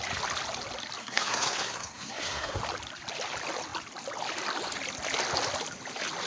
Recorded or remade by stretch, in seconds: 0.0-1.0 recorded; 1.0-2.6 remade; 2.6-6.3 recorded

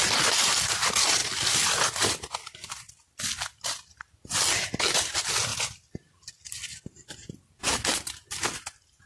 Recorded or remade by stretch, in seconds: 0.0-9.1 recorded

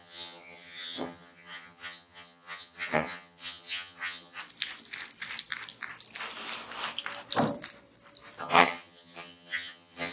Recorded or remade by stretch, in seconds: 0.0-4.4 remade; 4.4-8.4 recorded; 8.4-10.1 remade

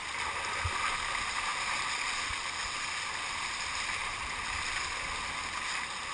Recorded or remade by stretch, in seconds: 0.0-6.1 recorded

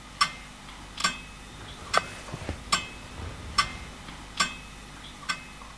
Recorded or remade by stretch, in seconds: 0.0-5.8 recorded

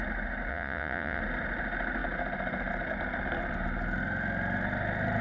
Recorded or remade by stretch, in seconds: 0.0-0.5 recorded; 0.5-1.2 remade; 1.2-5.2 recorded

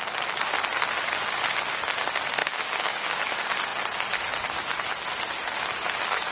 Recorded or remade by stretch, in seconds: 0.0-2.4 recorded; 2.4-3.2 remade; 3.2-6.3 recorded